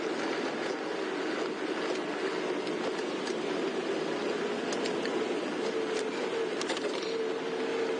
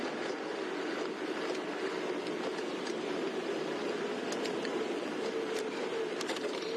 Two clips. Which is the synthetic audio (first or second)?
second